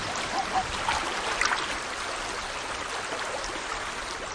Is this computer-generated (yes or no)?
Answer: no